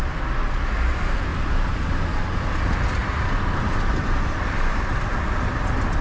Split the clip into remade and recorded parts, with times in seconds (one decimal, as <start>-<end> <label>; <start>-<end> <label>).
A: 0.0-1.3 recorded; 1.3-2.2 remade; 2.2-3.0 recorded; 3.0-6.0 remade